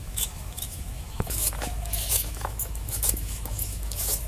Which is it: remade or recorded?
remade